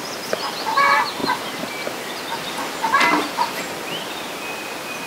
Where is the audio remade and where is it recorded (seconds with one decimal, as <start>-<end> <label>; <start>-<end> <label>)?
0.0-5.1 recorded